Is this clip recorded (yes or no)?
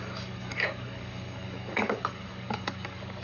no